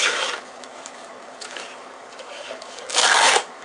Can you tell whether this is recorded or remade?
remade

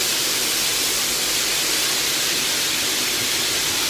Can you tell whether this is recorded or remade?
recorded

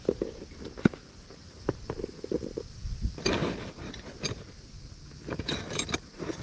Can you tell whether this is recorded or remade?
recorded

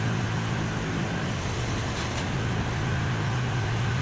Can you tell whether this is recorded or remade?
recorded